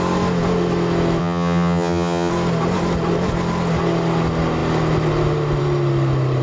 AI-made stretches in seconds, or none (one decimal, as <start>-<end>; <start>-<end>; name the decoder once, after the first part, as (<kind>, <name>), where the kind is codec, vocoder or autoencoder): 1.2-2.3 (vocoder, HiFi-GAN)